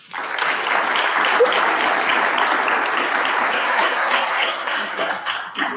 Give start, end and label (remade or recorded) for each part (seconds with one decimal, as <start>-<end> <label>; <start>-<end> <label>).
0.0-3.5 recorded; 3.5-5.3 remade; 5.3-5.8 recorded